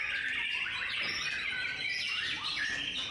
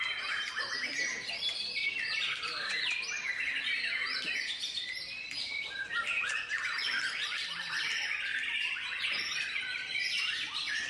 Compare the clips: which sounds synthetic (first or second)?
second